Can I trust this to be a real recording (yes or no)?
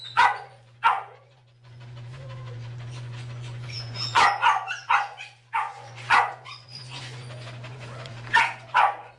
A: no